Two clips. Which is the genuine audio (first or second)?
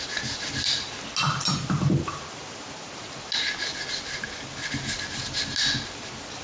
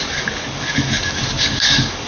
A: first